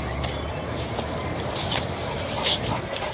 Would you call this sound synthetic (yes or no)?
yes